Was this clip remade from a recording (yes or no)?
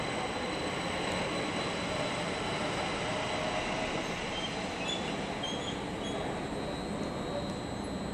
no